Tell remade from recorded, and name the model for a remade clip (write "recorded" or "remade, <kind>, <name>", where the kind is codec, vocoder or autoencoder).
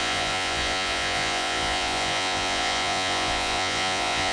remade, vocoder, Vocos